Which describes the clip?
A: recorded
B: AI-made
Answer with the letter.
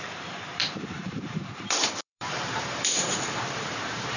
B